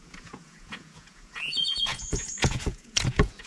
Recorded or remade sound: remade